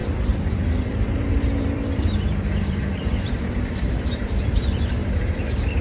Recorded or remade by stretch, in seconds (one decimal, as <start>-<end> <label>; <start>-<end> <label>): 0.0-5.0 remade; 5.0-5.8 recorded